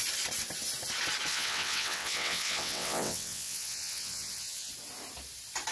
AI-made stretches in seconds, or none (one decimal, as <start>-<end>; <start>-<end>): 1.3-4.7